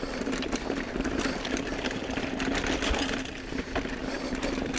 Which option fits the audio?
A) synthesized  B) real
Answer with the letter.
B